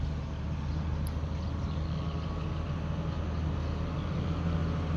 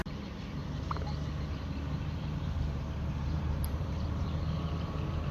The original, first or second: first